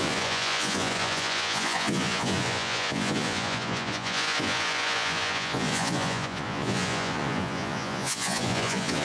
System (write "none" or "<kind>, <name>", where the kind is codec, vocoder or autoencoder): vocoder, Vocos